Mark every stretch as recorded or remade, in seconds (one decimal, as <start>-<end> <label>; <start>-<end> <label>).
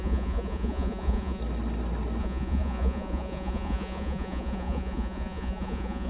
0.0-1.4 remade; 1.4-2.2 recorded; 2.2-6.1 remade